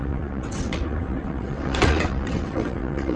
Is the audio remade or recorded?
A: remade